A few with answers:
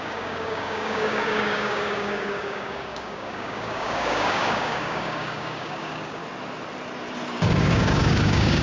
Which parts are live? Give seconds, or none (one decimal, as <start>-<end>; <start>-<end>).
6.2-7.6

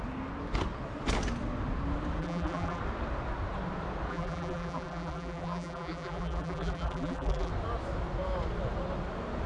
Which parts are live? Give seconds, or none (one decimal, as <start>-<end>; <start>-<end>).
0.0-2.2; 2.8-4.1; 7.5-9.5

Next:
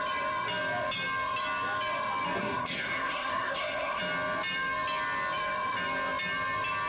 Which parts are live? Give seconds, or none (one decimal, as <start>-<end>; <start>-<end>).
0.0-2.4; 4.0-6.9

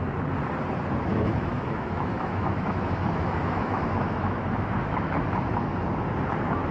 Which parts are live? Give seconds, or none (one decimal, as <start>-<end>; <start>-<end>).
0.0-1.1; 5.1-6.7

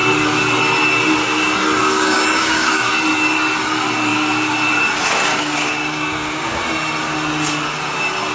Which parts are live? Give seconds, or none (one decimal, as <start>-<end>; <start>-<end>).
0.0-1.8; 2.9-5.3; 6.6-8.3